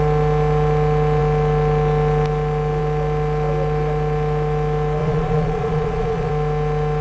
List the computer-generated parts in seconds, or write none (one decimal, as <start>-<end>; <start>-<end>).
5.0-6.3